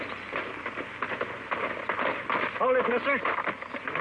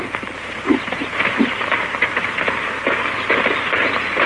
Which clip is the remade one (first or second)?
second